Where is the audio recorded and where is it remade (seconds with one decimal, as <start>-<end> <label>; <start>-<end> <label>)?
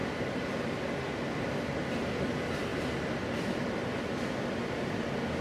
0.0-5.4 recorded